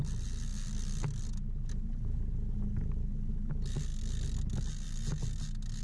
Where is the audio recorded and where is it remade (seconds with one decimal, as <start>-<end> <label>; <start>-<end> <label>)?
0.0-5.8 recorded